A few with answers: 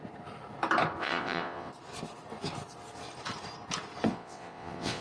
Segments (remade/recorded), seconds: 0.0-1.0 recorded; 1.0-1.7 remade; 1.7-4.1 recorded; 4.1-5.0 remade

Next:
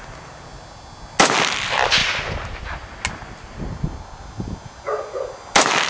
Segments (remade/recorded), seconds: 0.0-5.9 recorded

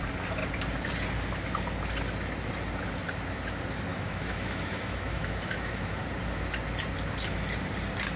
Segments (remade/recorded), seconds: 0.0-3.9 recorded; 3.9-6.0 remade; 6.0-8.2 recorded

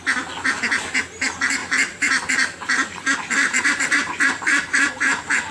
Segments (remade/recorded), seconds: 0.0-1.6 recorded; 1.6-4.9 remade; 4.9-5.5 recorded

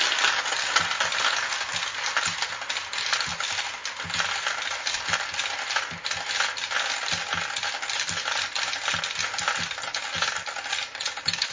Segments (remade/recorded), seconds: 0.0-11.5 recorded

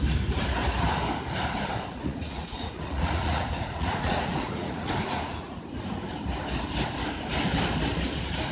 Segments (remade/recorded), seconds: 0.0-1.9 recorded; 1.9-5.6 remade; 5.6-8.5 recorded

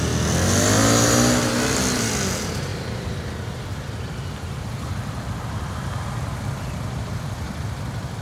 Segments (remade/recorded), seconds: 0.0-2.7 recorded; 2.7-7.6 remade; 7.6-8.2 recorded